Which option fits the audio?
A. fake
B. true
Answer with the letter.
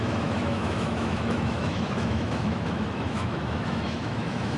A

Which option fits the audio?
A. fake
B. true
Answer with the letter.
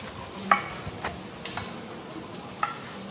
B